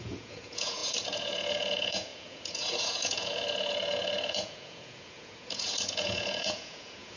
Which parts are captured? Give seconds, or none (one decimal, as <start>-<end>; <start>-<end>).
none